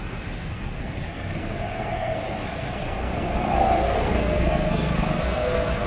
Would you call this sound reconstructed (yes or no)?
yes